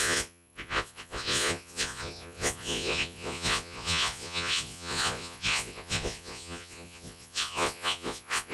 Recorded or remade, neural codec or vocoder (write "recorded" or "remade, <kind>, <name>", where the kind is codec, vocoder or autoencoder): remade, vocoder, Vocos